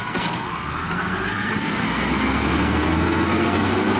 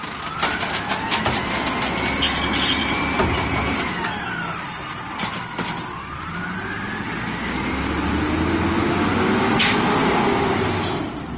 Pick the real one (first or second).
second